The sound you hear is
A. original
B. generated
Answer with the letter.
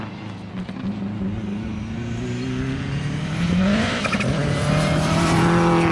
A